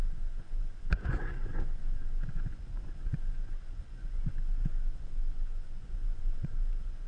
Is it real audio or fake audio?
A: fake